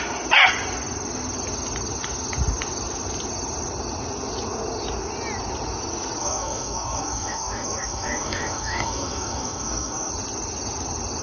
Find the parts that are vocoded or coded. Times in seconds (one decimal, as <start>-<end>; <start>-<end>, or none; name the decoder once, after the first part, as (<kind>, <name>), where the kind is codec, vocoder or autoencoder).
6.2-10.1 (codec, DAC)